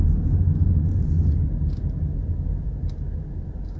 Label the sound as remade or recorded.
recorded